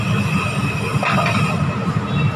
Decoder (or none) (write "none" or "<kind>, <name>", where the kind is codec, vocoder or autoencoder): none